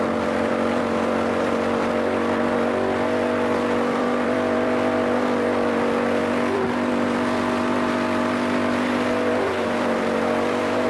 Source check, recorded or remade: remade